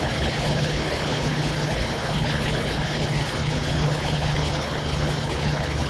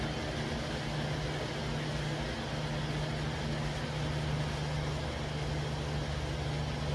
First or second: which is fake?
first